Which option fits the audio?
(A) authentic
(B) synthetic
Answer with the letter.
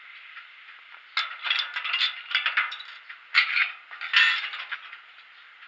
A